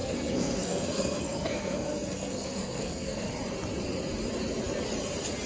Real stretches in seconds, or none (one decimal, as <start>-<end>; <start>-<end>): 3.3-5.5